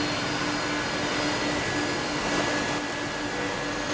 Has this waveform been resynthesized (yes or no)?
no